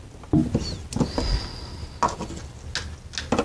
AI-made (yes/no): no